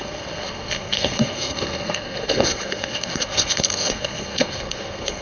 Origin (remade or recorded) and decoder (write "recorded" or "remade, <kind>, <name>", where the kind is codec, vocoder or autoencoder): remade, codec, SNAC